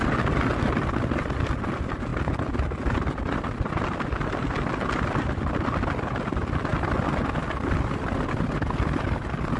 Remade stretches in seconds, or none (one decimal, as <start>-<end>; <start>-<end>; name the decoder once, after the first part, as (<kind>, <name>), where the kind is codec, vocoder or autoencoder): none